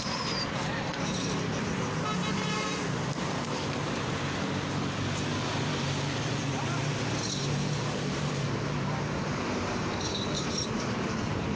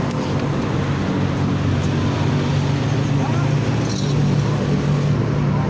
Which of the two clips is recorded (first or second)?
second